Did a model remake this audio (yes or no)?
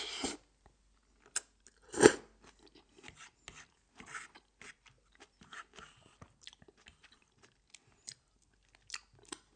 no